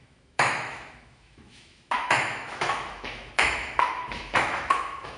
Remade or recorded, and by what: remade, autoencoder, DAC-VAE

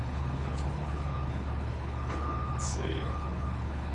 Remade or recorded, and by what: remade, codec, HILCodec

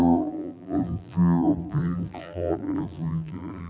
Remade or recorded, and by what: remade, vocoder, BigVGAN v2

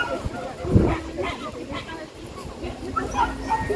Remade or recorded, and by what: recorded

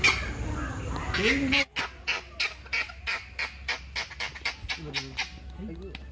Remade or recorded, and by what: recorded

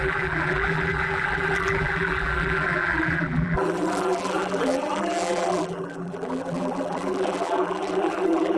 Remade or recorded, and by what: remade, vocoder, BigVGAN v2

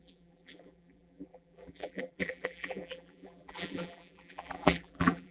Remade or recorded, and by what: remade, vocoder, BigVGAN v2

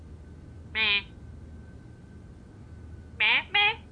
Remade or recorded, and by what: recorded